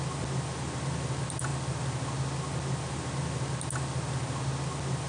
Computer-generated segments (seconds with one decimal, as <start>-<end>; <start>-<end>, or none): none